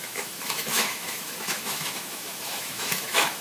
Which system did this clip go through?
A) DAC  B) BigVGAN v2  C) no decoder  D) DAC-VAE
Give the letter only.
D